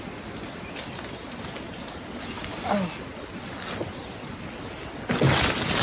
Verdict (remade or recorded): recorded